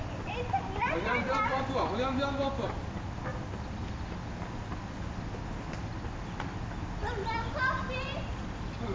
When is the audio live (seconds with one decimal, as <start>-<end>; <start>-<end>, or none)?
0.0-8.9